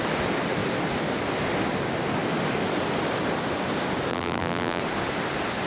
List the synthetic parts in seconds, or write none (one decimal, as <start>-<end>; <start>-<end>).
4.1-4.8